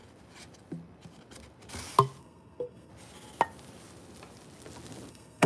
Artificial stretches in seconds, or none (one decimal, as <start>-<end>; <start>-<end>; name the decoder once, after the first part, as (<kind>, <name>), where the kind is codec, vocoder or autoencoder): 2.2-2.9 (codec, SNAC); 5.1-5.5